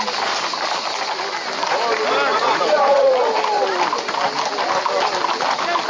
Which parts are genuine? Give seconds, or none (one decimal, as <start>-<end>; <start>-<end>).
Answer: 0.0-2.3; 3.1-5.9